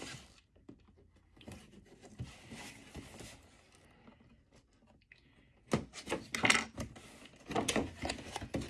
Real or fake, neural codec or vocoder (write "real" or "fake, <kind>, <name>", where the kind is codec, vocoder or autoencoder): real